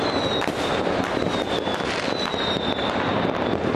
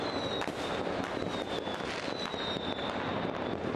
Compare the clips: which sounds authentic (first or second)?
second